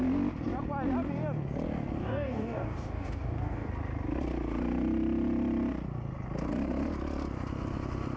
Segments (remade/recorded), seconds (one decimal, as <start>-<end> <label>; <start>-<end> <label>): 0.0-2.0 recorded; 2.0-3.7 remade; 3.7-8.2 recorded